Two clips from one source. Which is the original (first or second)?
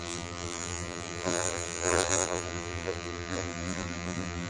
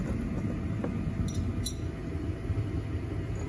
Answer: second